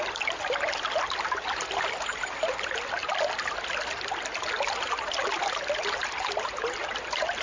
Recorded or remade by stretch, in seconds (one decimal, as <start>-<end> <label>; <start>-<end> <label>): 0.0-7.4 recorded